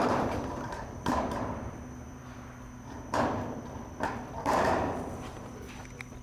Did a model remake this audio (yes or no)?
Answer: yes